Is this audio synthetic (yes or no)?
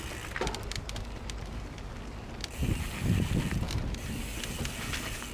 no